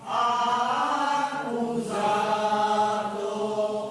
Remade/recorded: recorded